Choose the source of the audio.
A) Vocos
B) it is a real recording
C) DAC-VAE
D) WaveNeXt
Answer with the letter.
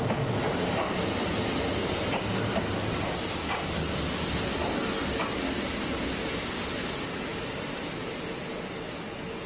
B